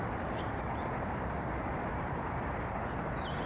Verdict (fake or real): fake